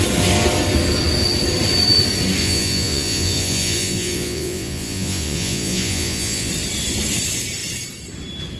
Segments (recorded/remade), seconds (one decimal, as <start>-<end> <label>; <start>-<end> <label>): 0.0-2.4 recorded; 2.4-6.5 remade; 6.5-8.6 recorded